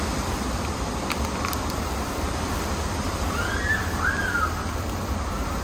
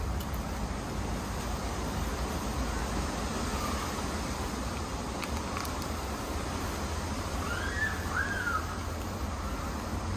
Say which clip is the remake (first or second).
first